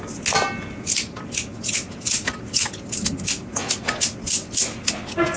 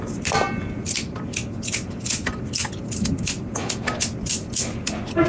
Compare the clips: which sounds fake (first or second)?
second